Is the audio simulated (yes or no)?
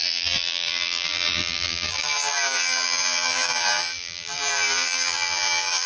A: yes